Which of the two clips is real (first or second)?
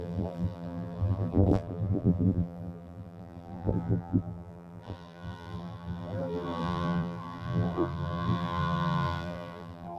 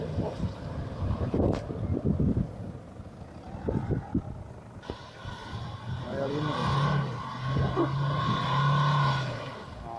second